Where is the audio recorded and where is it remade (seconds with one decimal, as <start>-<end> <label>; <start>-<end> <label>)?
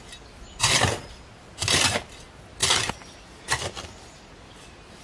0.0-5.0 recorded